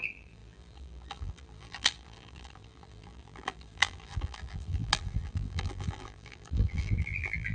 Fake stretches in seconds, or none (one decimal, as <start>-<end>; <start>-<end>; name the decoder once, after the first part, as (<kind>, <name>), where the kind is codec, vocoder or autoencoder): 0.0-7.5 (vocoder, BigVGAN v2)